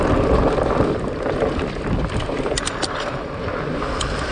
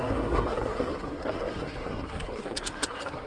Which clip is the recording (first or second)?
first